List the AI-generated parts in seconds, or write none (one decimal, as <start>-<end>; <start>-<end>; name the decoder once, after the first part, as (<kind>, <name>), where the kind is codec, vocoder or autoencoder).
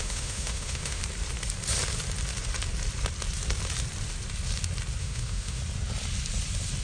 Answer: 0.0-1.0 (autoencoder, DAC-VAE); 5.0-5.6